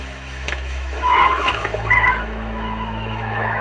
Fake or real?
fake